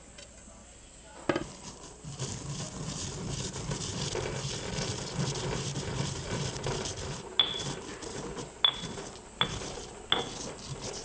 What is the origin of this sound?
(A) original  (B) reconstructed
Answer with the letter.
A